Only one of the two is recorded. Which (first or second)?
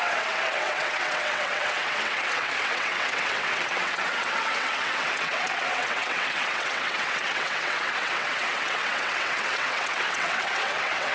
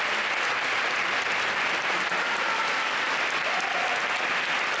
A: second